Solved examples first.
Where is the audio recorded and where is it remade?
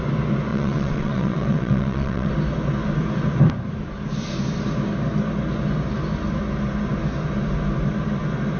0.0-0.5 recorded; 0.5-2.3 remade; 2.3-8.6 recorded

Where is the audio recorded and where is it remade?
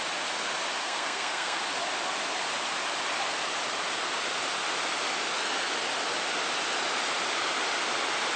0.0-0.8 recorded; 0.8-1.6 remade; 1.6-8.4 recorded